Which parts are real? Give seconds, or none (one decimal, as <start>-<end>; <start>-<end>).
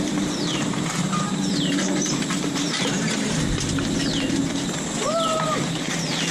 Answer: 0.0-0.5; 3.4-6.3